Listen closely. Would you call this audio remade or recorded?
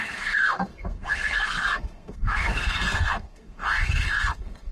remade